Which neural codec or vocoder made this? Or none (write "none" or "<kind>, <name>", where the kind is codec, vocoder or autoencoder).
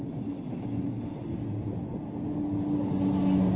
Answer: none